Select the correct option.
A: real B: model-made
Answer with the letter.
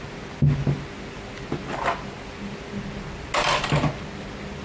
A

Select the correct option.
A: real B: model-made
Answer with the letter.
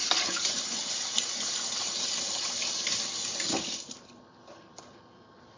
A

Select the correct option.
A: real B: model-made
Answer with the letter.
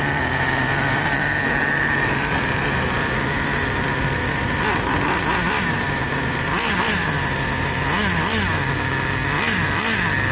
A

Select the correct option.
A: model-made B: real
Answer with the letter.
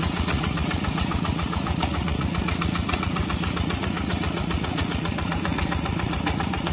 A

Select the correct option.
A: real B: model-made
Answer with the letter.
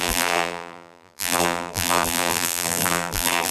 B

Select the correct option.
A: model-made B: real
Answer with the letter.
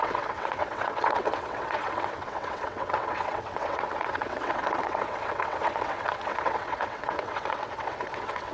A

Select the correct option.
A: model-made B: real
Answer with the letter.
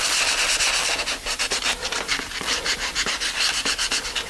A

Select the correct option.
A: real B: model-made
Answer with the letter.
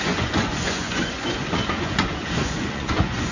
B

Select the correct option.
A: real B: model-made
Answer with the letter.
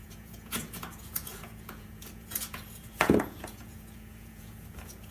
B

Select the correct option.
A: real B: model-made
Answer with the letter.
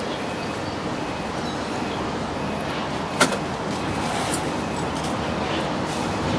A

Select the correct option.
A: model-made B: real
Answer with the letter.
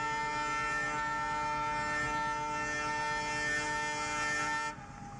B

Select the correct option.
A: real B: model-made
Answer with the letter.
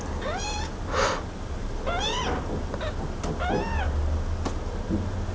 A